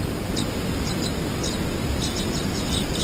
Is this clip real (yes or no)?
yes